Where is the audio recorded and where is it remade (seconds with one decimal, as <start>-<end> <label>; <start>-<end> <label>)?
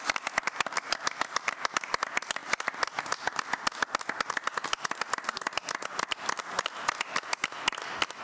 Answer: 0.0-8.2 recorded